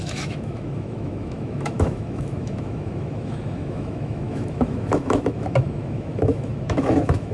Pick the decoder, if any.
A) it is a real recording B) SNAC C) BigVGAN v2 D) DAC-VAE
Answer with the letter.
D